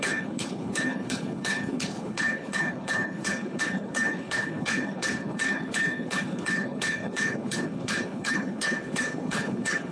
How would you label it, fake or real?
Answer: fake